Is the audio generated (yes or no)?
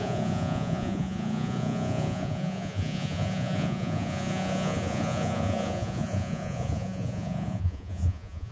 yes